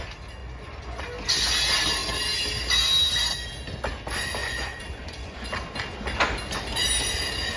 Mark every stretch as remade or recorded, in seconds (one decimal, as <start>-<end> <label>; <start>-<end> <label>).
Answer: 0.0-0.4 recorded; 0.4-1.0 remade; 1.0-4.4 recorded; 4.4-5.5 remade; 5.5-7.6 recorded